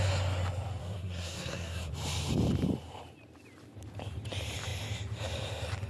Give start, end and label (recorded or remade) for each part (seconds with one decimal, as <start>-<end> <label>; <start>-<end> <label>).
0.0-0.8 recorded; 0.8-1.9 remade; 1.9-5.9 recorded